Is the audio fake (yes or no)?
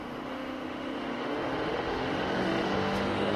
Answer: yes